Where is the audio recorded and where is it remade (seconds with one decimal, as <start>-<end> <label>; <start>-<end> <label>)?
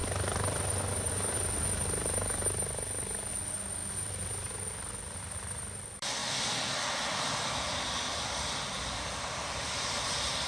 0.0-3.8 recorded; 3.8-4.5 remade; 4.5-6.2 recorded; 6.2-9.6 remade; 9.6-10.5 recorded